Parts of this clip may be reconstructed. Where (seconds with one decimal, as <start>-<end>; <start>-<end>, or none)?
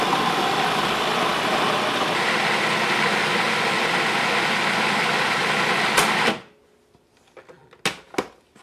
none